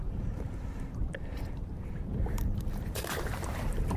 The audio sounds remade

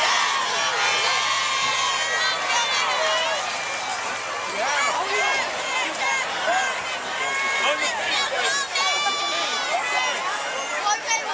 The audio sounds recorded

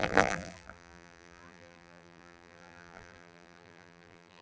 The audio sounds remade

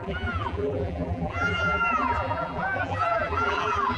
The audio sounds remade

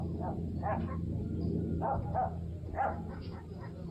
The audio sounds recorded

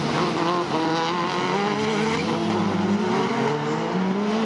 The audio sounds recorded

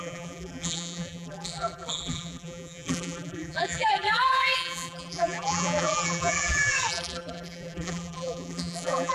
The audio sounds remade